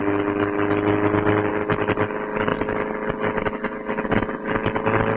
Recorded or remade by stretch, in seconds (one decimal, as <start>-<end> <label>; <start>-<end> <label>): 0.0-5.2 recorded